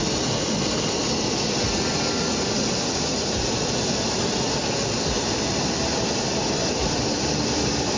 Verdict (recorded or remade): recorded